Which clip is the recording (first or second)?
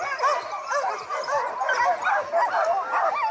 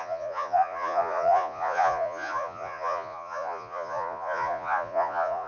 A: first